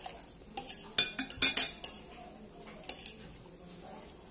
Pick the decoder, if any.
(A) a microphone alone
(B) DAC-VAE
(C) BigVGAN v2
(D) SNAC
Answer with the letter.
A